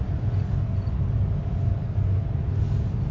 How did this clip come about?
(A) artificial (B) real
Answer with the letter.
B